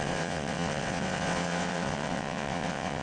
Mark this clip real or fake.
fake